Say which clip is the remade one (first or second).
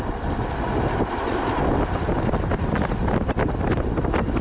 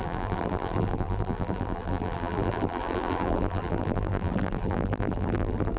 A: second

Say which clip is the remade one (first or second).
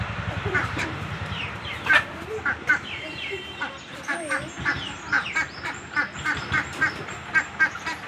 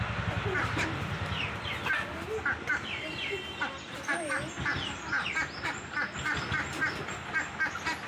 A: first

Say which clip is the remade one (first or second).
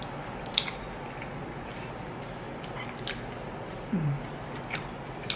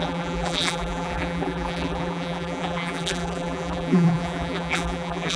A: second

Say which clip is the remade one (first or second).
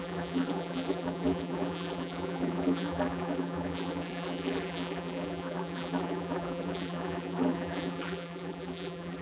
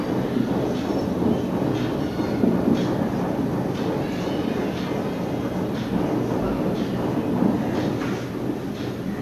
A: first